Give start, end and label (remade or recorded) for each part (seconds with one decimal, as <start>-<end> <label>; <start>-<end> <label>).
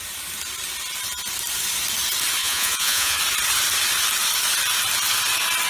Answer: 0.0-2.4 recorded; 2.4-3.2 remade; 3.2-5.7 recorded